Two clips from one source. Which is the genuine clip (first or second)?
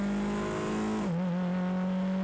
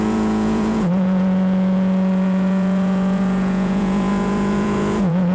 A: first